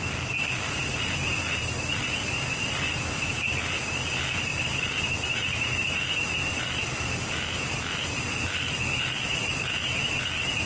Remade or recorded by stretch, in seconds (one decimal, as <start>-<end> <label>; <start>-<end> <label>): 0.0-10.7 recorded